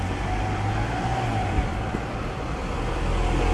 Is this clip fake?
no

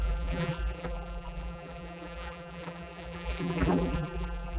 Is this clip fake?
yes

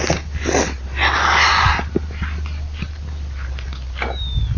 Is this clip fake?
no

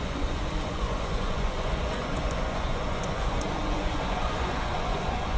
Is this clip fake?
yes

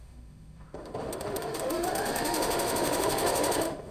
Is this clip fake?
yes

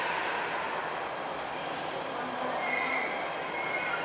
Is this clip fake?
no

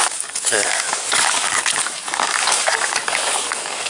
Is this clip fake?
yes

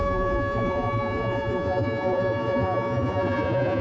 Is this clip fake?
yes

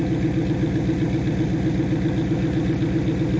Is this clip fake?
no